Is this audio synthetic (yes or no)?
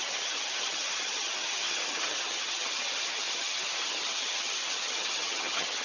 yes